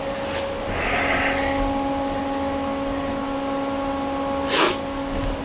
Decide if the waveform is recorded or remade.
recorded